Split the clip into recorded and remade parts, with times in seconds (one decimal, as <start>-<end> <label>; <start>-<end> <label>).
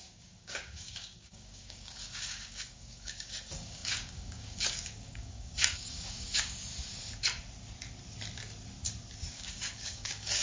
0.0-6.7 remade; 6.7-9.3 recorded; 9.3-10.4 remade